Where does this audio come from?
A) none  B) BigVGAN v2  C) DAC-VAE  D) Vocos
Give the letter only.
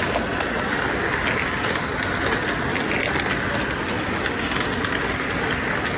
A